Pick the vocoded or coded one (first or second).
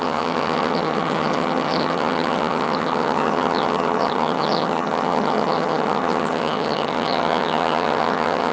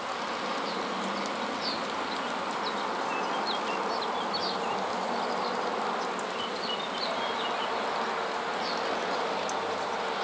first